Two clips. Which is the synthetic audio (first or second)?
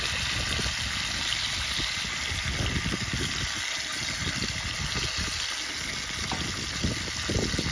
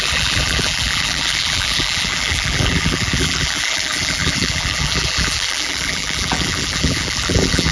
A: second